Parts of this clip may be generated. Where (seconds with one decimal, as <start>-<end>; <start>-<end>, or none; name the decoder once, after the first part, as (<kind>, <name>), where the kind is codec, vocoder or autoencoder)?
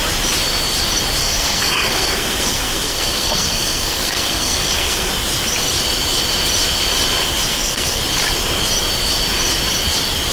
1.2-5.1 (codec, SNAC); 7.5-8.0